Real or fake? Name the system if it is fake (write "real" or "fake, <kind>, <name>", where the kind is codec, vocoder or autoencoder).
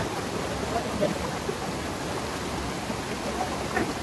real